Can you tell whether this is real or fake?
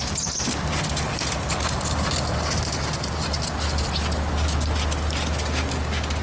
real